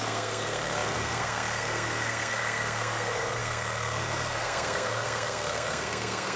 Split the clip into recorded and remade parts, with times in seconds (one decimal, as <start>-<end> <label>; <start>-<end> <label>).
0.0-6.4 remade